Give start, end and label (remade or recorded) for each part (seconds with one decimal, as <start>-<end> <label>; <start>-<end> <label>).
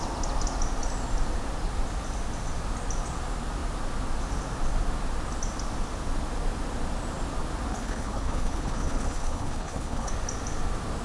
0.0-7.7 recorded; 7.7-10.1 remade; 10.1-11.0 recorded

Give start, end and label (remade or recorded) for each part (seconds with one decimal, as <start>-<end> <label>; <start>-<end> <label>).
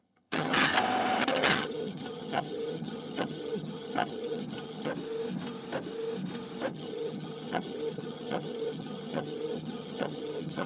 0.0-0.7 remade; 0.7-1.2 recorded; 1.2-4.9 remade; 4.9-6.7 recorded; 6.7-10.7 remade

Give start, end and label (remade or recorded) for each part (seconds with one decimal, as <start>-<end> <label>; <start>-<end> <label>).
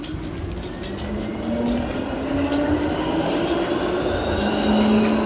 0.0-5.3 recorded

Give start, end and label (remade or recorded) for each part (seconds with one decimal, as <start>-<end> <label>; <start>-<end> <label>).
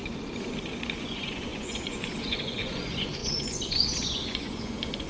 0.0-1.0 recorded; 1.0-5.1 remade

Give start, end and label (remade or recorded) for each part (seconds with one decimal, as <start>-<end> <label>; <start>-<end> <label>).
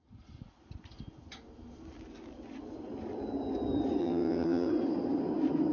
0.0-4.0 recorded; 4.0-4.7 remade; 4.7-5.7 recorded